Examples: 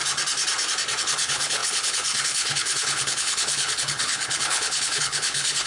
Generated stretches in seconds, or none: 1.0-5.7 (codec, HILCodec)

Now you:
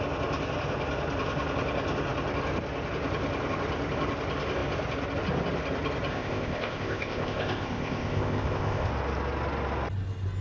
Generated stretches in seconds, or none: 6.1-8.9 (codec, ZipCodec)